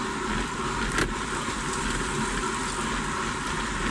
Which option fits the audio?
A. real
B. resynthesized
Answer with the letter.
A